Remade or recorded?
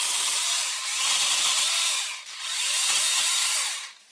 remade